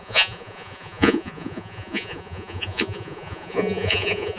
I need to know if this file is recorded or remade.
remade